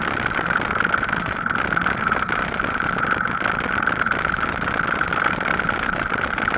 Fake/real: real